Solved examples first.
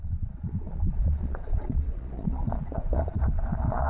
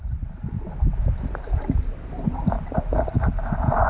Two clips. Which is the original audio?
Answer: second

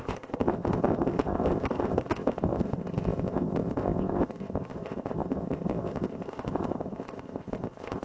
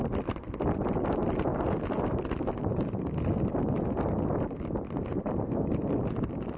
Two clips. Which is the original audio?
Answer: second